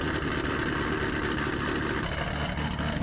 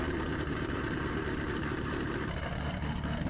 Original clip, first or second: first